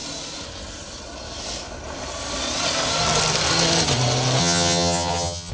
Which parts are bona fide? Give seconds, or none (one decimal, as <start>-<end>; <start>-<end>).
0.0-4.4